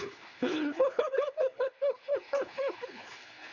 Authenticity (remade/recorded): remade